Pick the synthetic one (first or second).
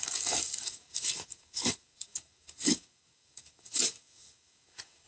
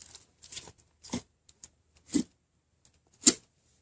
first